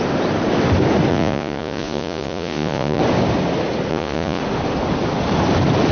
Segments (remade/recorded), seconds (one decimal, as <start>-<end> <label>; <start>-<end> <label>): 0.0-1.1 recorded; 1.1-3.0 remade; 3.0-3.9 recorded; 3.9-4.4 remade; 4.4-5.9 recorded